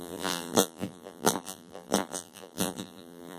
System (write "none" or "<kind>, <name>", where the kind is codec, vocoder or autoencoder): vocoder, BigVGAN v2